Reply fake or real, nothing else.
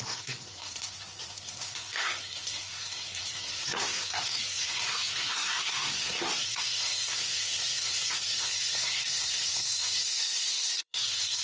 fake